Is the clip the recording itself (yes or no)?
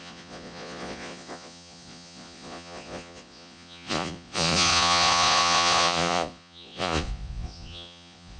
no